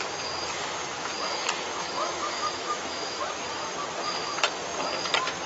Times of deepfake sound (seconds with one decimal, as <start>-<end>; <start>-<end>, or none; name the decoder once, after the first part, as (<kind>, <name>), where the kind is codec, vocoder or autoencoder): 1.7-3.3 (autoencoder, DAC-VAE)